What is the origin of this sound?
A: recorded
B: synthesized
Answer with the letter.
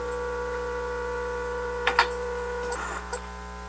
A